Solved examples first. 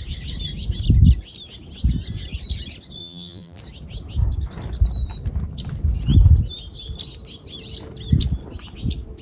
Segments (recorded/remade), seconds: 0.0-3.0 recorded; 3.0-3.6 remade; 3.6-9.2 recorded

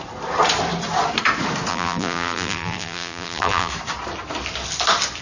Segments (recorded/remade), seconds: 0.0-1.7 recorded; 1.7-3.7 remade; 3.7-5.2 recorded

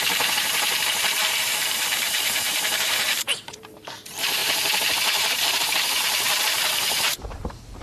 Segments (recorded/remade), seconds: 0.0-7.8 remade

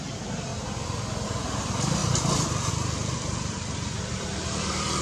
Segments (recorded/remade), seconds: 0.0-0.5 remade; 0.5-1.6 recorded; 1.6-5.0 remade